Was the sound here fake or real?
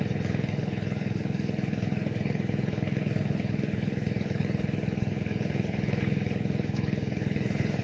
fake